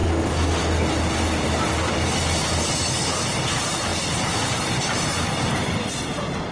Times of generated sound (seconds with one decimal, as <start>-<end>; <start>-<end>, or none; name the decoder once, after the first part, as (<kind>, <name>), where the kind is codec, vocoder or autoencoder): none